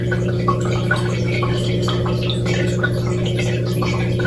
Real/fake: real